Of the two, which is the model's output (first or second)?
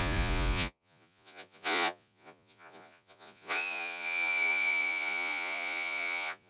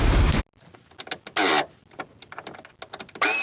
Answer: first